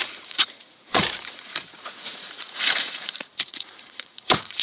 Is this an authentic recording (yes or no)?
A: no